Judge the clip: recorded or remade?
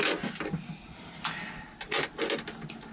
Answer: recorded